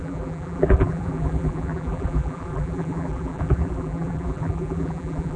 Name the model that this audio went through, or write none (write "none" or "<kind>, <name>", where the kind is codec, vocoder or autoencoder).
vocoder, BigVGAN v2